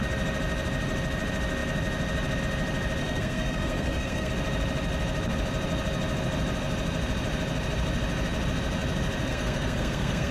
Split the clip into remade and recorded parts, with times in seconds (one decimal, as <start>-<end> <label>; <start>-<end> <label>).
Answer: 0.0-3.0 recorded; 3.0-4.3 remade; 4.3-9.3 recorded; 9.3-10.3 remade